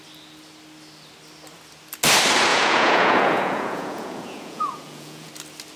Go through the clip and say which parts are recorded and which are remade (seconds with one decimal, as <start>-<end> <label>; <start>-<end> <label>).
0.0-2.5 recorded; 2.5-5.3 remade; 5.3-5.8 recorded